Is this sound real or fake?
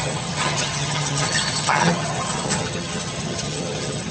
fake